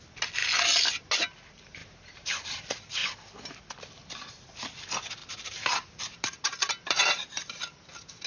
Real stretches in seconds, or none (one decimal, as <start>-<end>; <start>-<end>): 0.0-1.8; 2.6-5.2; 7.9-8.3